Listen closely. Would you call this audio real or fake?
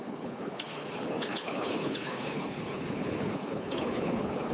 fake